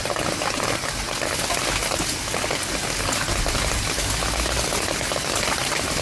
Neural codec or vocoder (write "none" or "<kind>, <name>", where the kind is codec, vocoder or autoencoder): none